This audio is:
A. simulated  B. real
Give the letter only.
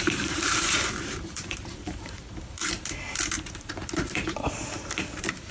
A